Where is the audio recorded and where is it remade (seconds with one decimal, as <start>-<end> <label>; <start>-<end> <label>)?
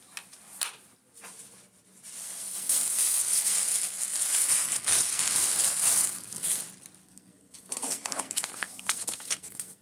0.0-2.2 recorded; 2.2-6.6 remade; 6.6-7.0 recorded; 7.0-9.8 remade